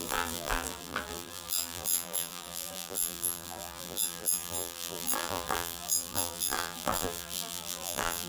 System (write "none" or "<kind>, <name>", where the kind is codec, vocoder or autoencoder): vocoder, BigVGAN v2